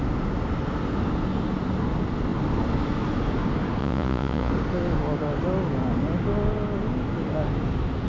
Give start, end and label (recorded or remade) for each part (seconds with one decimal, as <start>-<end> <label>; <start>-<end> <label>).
0.0-3.8 recorded; 3.8-4.5 remade; 4.5-8.1 recorded